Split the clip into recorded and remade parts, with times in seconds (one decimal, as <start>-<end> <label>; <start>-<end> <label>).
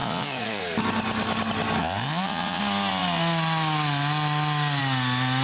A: 0.0-0.6 remade; 0.6-1.8 recorded; 1.8-2.6 remade; 2.6-5.4 recorded